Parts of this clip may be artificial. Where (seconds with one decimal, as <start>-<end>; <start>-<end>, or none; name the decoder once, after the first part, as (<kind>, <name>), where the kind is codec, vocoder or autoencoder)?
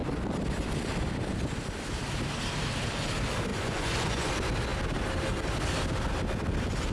3.5-4.3 (vocoder, Vocos)